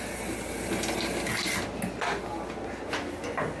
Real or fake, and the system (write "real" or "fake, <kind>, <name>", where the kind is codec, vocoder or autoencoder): real